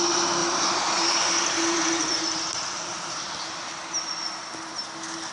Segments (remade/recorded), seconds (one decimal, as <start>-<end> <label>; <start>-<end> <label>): 0.0-0.4 recorded; 0.4-3.1 remade; 3.1-5.3 recorded